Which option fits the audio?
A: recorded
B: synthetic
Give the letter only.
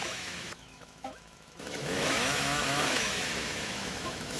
B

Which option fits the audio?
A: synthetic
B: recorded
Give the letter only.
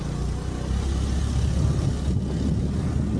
B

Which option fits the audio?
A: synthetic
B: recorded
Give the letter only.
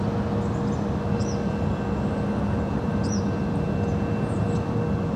B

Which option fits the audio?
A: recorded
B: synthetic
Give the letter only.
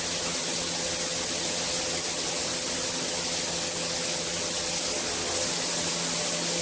A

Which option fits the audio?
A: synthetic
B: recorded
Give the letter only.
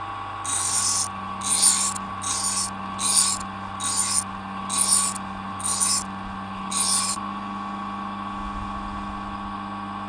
B